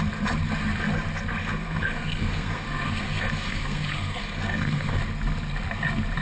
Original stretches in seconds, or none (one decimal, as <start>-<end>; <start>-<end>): 0.0-1.4; 5.0-6.2